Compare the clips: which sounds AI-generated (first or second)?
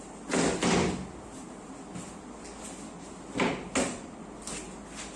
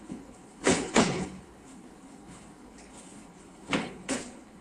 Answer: second